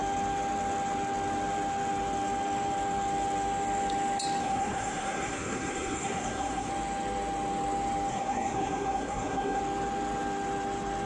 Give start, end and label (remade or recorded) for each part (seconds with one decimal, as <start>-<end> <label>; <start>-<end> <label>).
0.0-4.4 recorded; 4.4-6.7 remade; 6.7-8.1 recorded; 8.1-9.6 remade; 9.6-11.1 recorded